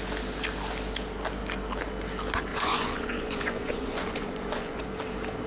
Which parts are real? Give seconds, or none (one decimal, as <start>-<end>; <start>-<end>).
0.0-2.5; 4.8-5.5

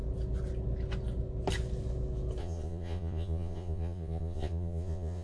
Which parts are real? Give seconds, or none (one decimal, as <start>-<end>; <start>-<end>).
0.0-2.4

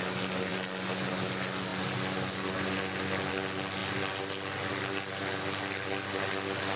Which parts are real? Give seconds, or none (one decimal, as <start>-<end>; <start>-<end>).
0.0-6.8

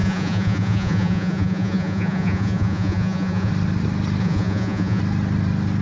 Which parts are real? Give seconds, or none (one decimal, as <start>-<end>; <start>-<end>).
3.5-4.2; 5.0-5.8